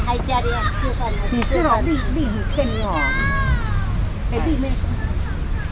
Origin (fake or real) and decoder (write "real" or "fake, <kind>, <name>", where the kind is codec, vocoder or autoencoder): real